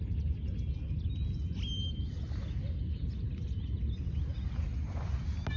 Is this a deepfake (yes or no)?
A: no